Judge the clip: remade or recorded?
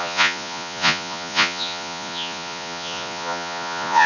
remade